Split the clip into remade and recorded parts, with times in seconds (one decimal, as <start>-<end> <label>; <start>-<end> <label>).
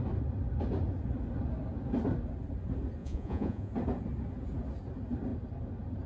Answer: 0.0-3.0 recorded; 3.0-3.7 remade; 3.7-6.1 recorded